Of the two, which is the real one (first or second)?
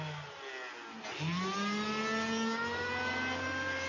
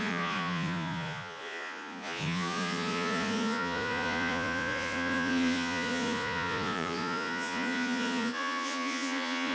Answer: first